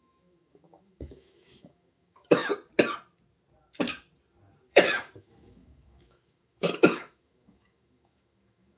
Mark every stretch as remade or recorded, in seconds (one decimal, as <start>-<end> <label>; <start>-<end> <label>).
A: 0.0-2.5 remade; 2.5-4.7 recorded; 4.7-8.8 remade